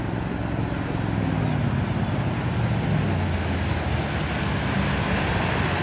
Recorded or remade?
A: recorded